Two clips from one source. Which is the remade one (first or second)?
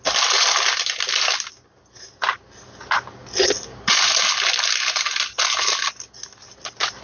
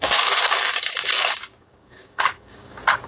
second